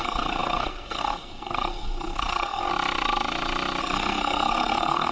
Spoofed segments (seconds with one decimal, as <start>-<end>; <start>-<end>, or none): 0.0-2.7; 3.8-5.1